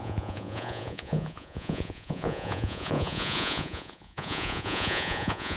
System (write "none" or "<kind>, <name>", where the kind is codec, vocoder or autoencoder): vocoder, Vocos